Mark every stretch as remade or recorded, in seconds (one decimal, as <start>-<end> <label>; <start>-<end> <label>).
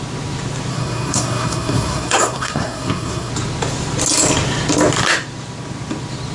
0.0-0.7 recorded; 0.7-3.3 remade; 3.3-6.3 recorded